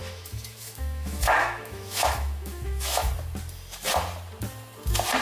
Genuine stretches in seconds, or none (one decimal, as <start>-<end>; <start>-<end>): 3.1-5.2